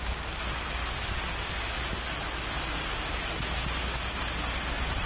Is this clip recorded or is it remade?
recorded